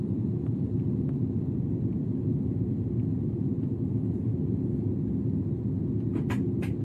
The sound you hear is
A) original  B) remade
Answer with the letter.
A